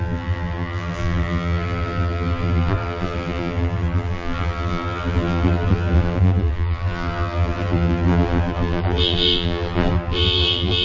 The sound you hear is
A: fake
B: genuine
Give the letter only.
A